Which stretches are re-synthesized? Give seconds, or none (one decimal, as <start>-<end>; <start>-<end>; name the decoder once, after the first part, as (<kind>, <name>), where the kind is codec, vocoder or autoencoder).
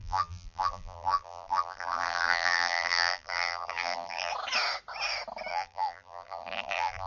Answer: 0.0-4.3 (vocoder, BigVGAN v2); 5.5-7.1